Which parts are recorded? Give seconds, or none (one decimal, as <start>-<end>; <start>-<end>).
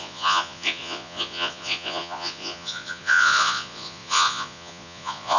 none